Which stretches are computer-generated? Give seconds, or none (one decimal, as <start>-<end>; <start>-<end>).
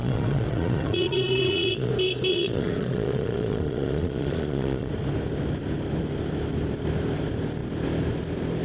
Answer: 0.0-1.9; 2.3-4.9